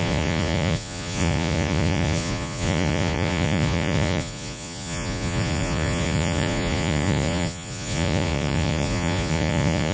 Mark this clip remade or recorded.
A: remade